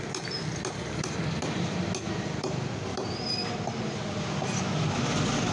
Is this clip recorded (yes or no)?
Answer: yes